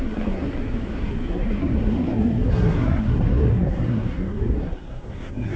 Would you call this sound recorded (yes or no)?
no